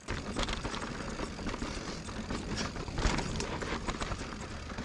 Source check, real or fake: real